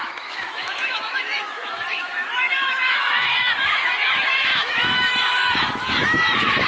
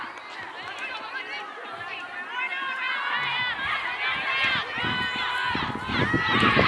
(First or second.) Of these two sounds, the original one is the second